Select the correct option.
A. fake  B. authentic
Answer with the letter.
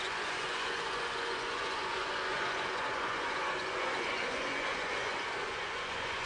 A